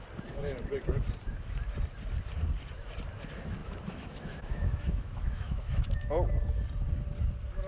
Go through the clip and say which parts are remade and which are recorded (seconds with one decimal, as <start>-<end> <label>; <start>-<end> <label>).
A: 0.0-3.6 recorded; 3.6-6.1 remade; 6.1-7.7 recorded